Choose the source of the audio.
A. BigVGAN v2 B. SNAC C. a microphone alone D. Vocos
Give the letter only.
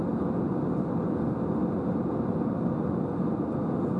C